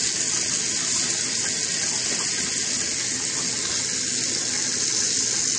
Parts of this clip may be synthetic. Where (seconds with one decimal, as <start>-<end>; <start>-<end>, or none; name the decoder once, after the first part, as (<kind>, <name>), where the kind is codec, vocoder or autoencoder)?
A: none